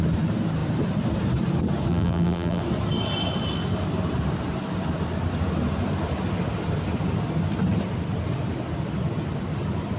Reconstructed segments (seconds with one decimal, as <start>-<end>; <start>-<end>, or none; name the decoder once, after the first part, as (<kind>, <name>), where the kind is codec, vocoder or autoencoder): 1.9-2.6 (vocoder, BigVGAN v2)